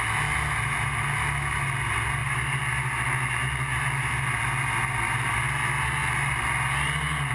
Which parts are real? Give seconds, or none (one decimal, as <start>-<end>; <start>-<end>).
0.0-7.3